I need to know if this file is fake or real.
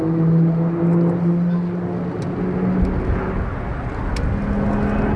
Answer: real